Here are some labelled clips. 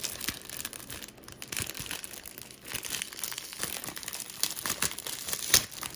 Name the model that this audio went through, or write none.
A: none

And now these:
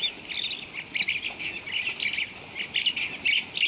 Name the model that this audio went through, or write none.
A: none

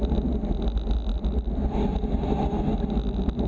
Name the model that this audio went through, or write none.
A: none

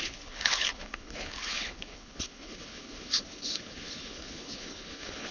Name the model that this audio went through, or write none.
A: codec, HILCodec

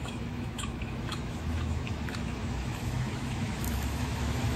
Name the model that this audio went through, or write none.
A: autoencoder, DAC-VAE